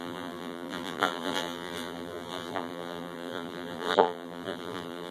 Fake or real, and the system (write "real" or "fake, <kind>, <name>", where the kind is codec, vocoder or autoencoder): fake, vocoder, BigVGAN v2